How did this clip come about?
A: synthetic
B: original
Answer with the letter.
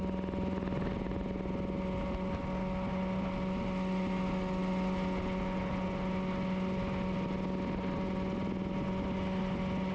B